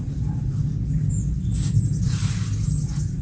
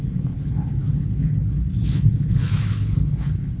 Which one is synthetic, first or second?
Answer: second